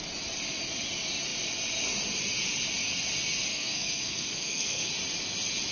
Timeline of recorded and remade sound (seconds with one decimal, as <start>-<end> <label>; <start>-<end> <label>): 0.0-3.5 recorded; 3.5-4.9 remade; 4.9-5.7 recorded